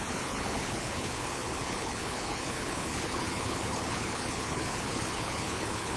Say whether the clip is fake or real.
fake